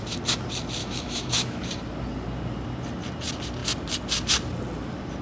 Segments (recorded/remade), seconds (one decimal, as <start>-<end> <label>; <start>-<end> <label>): 0.0-0.8 recorded; 0.8-1.6 remade; 1.6-5.2 recorded